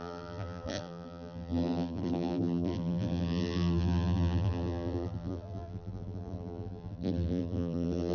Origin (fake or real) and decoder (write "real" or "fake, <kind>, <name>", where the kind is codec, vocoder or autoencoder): fake, vocoder, BigVGAN v2